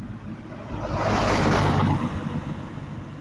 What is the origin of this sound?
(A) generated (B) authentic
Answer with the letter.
B